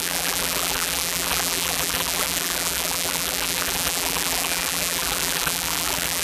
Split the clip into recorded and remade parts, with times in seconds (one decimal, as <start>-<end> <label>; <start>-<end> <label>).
0.0-6.2 remade